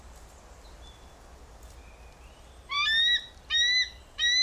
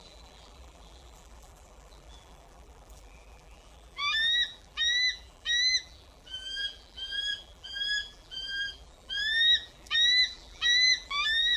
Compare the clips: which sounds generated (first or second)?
second